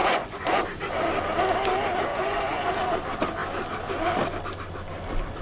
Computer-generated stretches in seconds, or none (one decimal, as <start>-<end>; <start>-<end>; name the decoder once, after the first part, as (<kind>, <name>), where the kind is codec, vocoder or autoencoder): 0.0-0.6 (vocoder, Vocos); 2.1-2.7